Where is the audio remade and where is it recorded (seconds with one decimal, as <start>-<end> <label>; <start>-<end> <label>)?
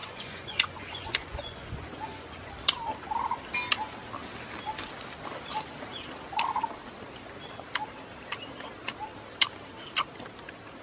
0.0-2.5 remade; 2.5-10.8 recorded